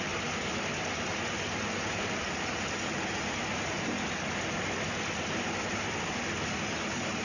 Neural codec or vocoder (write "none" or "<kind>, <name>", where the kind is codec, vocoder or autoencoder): none